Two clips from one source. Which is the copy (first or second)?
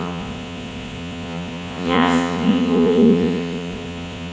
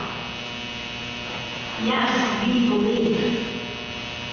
first